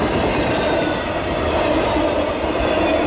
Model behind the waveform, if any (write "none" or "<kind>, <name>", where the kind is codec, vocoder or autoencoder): none